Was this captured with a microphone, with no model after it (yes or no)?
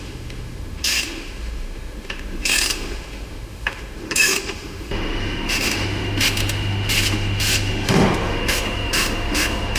no